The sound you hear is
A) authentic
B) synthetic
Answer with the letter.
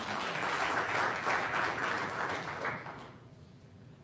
B